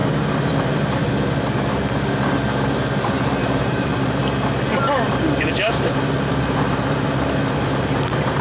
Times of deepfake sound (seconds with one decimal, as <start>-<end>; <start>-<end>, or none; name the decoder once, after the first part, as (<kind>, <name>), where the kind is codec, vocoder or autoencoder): 0.0-1.0 (vocoder, BigVGAN v2); 3.4-4.2; 5.1-8.4